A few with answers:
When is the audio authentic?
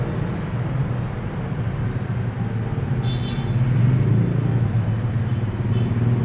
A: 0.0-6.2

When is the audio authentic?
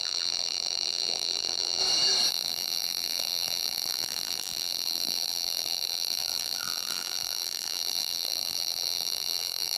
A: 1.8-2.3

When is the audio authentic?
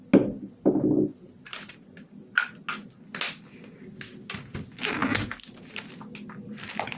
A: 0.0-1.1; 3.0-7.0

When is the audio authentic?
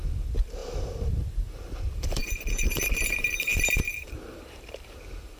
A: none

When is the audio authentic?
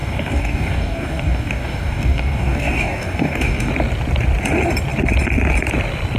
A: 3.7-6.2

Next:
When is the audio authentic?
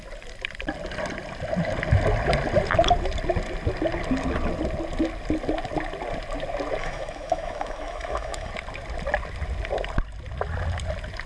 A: 0.0-6.8; 8.5-11.3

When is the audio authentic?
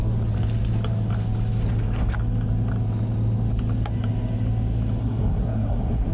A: 0.0-5.0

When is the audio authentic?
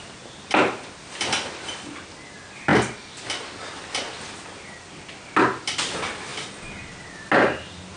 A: 0.0-8.0